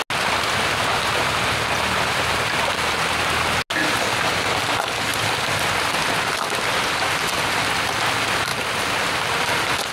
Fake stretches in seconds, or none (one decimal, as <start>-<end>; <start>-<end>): 5.1-5.6